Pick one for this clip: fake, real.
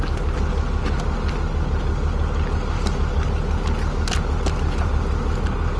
real